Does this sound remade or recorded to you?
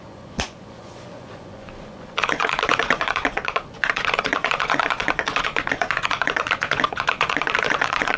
remade